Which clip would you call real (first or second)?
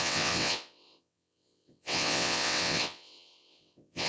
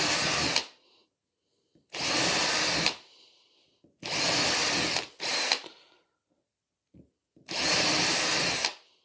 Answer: second